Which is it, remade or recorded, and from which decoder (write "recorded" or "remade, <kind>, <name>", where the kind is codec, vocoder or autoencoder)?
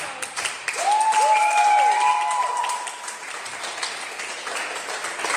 recorded